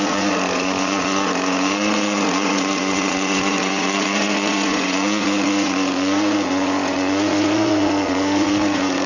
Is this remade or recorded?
remade